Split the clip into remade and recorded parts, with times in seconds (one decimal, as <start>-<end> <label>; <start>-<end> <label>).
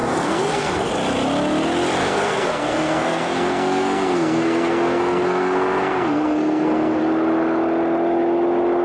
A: 0.0-0.9 remade; 0.9-2.0 recorded; 2.0-7.0 remade; 7.0-8.8 recorded